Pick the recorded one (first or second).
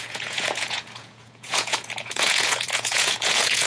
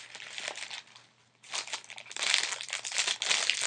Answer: second